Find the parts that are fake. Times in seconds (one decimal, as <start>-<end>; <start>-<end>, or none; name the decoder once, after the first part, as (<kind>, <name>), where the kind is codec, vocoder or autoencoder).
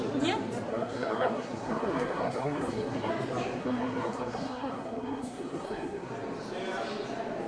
0.7-3.1 (codec, SNAC); 3.6-6.1